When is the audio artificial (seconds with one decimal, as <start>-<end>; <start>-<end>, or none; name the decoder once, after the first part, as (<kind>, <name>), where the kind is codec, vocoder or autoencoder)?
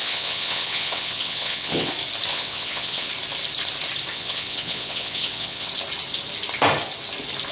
0.0-1.9 (vocoder, WaveNeXt); 2.3-3.1; 4.1-5.7